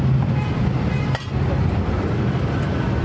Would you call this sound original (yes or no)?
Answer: yes